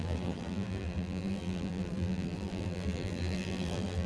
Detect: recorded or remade remade